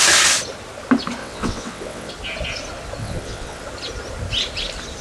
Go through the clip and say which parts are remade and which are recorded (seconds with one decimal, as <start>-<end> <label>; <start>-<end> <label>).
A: 0.0-1.2 recorded; 1.2-2.1 remade; 2.1-3.0 recorded; 3.0-3.6 remade; 3.6-5.0 recorded